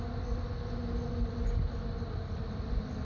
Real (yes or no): yes